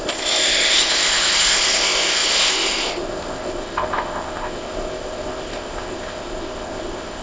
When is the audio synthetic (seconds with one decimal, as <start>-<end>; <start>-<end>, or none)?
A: 0.0-7.2